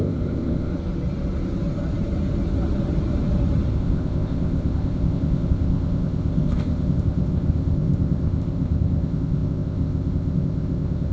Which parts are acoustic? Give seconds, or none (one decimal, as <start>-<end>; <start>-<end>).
0.7-3.7